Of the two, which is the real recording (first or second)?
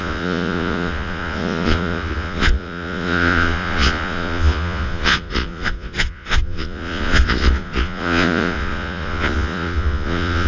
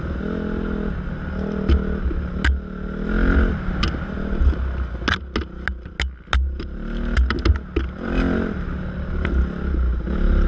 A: second